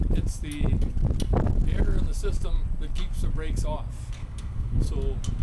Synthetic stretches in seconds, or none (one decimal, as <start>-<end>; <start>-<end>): 4.2-4.8